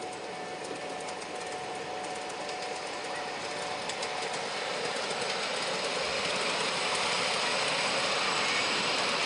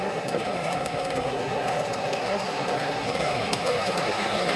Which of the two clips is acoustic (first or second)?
first